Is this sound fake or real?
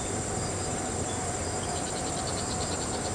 fake